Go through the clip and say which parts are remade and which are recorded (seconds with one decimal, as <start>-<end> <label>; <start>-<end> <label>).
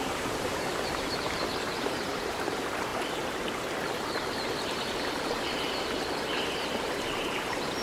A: 0.0-2.9 remade; 2.9-6.9 recorded; 6.9-7.8 remade